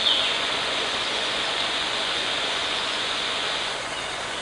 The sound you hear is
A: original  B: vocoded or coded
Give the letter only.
B